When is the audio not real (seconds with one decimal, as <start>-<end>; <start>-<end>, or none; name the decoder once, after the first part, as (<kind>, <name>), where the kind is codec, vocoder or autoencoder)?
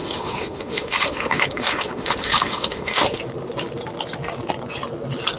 0.0-3.2 (autoencoder, DAC-VAE)